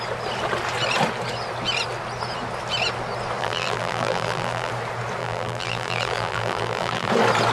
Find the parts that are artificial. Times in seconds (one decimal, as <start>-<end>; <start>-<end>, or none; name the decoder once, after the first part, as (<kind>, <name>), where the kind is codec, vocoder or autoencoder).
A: 3.4-4.7 (vocoder, BigVGAN v2); 5.2-7.1